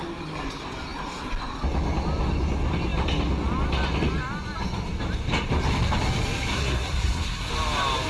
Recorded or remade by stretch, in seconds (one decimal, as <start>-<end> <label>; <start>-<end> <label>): 0.0-6.5 recorded; 6.5-7.5 remade; 7.5-8.1 recorded